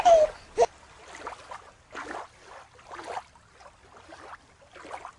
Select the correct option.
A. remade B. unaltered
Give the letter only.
B